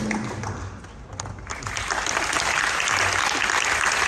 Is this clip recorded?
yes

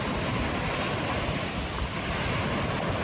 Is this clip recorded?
yes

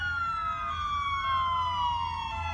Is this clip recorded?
yes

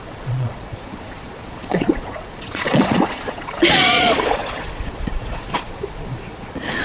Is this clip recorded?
no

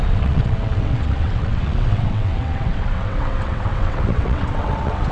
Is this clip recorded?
no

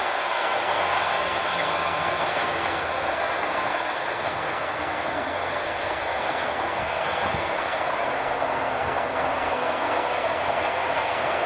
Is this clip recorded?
no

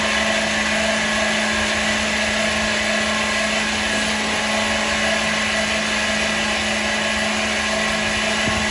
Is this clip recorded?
yes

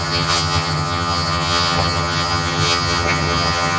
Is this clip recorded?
no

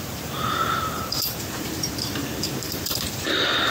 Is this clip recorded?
no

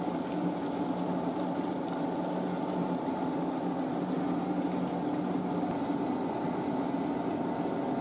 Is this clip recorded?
yes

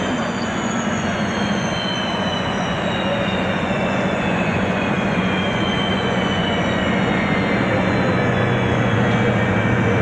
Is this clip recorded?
no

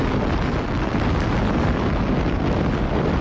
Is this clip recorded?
yes